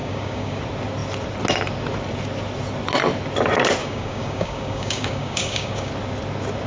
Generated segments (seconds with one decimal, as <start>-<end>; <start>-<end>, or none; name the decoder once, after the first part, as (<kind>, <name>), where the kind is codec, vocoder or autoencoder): 0.0-0.6 (codec, DAC); 3.8-5.9